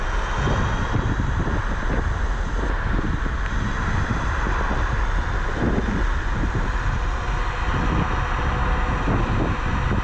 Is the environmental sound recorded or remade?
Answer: recorded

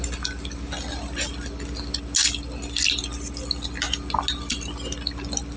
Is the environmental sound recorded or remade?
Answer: recorded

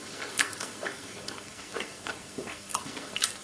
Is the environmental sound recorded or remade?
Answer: remade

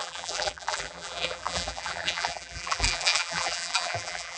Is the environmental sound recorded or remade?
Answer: remade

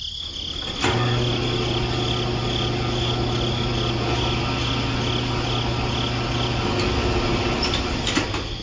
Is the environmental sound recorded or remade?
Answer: recorded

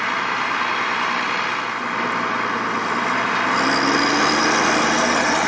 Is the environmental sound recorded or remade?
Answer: recorded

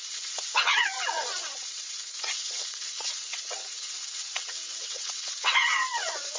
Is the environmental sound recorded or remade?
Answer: remade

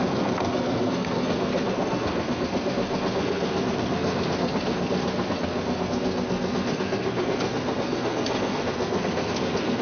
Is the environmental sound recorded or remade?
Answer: remade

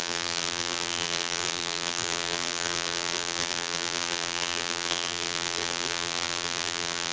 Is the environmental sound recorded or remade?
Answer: remade